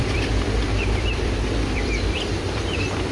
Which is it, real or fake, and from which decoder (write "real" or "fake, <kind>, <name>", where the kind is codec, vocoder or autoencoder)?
fake, vocoder, BigVGAN v2